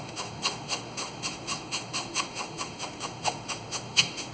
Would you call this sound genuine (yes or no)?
no